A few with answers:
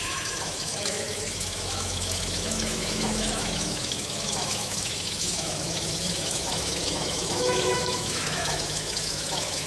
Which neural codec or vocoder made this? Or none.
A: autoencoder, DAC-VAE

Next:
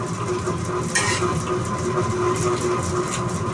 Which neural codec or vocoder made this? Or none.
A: none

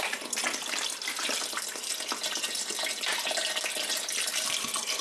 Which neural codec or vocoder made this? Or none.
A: none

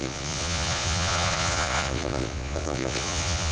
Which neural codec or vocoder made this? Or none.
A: vocoder, Vocos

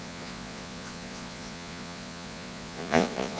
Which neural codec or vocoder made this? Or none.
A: vocoder, Vocos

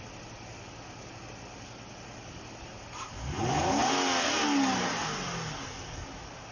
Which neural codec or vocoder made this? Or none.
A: none